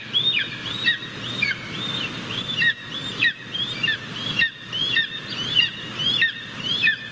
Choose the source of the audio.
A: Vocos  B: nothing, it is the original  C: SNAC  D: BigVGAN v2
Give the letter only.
B